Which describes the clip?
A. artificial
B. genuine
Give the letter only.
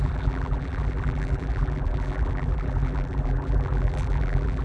A